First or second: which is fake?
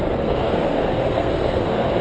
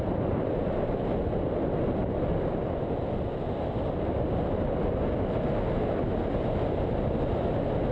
first